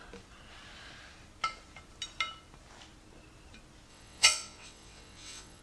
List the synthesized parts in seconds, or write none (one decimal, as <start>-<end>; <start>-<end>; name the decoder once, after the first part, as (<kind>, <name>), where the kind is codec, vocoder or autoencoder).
3.9-5.6 (vocoder, WaveNeXt)

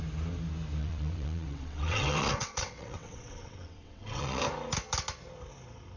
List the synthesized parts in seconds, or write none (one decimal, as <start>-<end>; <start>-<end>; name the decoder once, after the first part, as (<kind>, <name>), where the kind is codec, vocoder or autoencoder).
0.8-4.4 (vocoder, WaveNeXt)

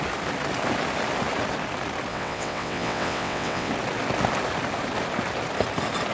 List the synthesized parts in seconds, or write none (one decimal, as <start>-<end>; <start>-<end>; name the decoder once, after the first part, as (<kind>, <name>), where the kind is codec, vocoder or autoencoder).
2.1-3.7 (vocoder, WaveNeXt)

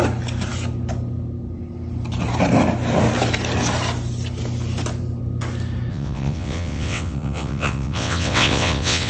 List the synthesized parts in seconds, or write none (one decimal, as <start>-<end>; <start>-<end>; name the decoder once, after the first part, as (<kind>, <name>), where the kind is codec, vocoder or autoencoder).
5.9-9.1 (vocoder, WaveNeXt)

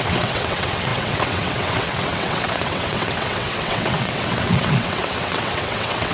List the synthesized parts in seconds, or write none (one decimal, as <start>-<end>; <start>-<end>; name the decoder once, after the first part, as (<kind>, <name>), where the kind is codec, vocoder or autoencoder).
0.0-6.1 (vocoder, WaveNeXt)

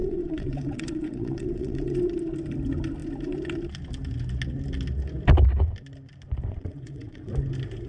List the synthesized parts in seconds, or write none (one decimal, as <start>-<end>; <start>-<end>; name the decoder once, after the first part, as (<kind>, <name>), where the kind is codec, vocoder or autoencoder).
0.0-1.9 (vocoder, WaveNeXt); 6.5-7.3

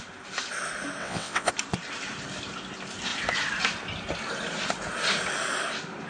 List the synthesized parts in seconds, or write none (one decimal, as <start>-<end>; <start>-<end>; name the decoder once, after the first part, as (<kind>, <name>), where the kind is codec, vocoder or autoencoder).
1.0-1.5 (vocoder, WaveNeXt)

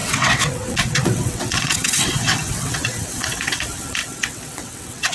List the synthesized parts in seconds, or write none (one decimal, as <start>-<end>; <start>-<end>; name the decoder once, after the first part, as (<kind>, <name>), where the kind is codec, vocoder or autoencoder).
0.0-5.1 (vocoder, WaveNeXt)